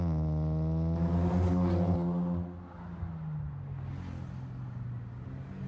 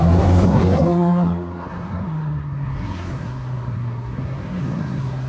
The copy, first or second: second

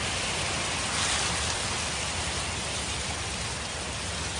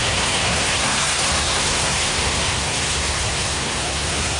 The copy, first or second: second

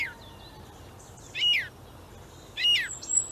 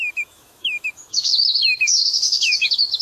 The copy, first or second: second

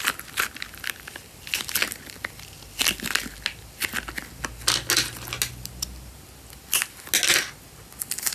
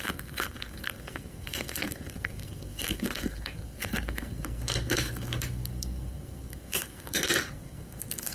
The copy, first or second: second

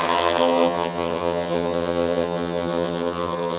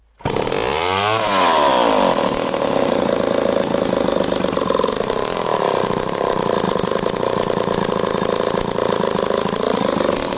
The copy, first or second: first